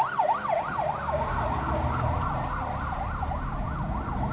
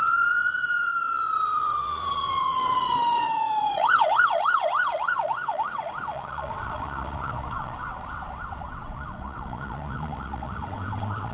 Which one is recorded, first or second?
first